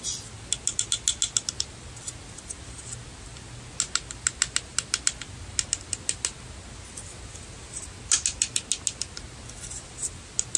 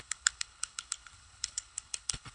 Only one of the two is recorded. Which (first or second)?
first